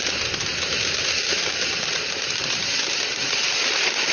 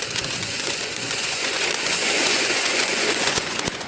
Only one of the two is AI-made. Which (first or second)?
second